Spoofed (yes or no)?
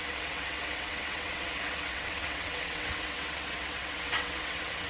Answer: yes